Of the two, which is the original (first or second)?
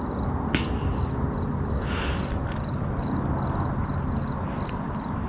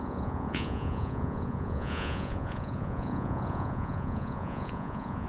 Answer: first